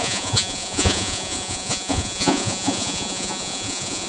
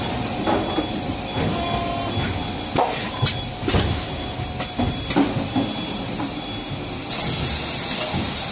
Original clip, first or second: second